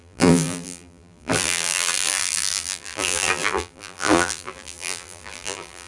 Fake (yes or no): yes